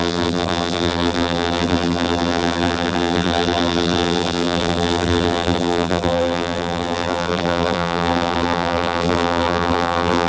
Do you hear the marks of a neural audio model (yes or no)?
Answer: yes